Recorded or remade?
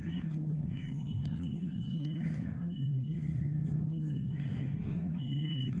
remade